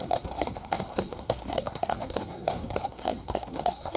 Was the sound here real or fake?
fake